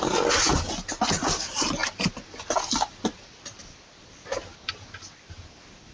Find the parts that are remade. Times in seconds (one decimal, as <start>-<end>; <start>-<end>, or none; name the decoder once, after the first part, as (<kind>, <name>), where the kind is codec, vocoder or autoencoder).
0.0-0.5 (vocoder, BigVGAN v2); 1.3-5.9